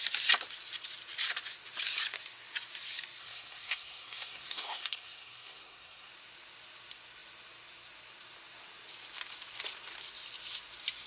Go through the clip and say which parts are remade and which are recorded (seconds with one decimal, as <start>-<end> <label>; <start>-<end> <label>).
0.0-3.2 recorded; 3.2-6.1 remade; 6.1-11.1 recorded

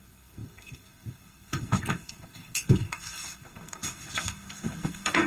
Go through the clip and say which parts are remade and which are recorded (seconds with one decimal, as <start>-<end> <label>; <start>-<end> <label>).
0.0-5.3 remade

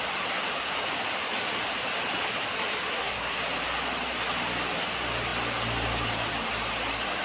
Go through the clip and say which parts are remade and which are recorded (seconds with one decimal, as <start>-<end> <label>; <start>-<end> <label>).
0.0-2.9 recorded; 2.9-3.4 remade; 3.4-7.2 recorded

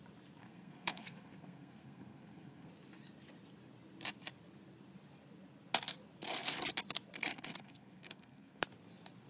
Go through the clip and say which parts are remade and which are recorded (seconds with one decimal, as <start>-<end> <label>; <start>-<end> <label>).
0.0-0.4 recorded; 0.4-2.7 remade; 2.7-7.3 recorded; 7.3-8.6 remade; 8.6-9.3 recorded